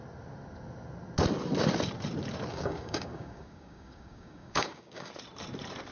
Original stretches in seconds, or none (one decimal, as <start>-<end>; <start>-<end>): 0.0-2.5; 5.1-5.9